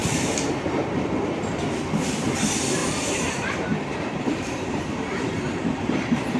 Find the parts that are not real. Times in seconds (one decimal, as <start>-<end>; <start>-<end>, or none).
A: 0.0-0.7; 2.8-6.4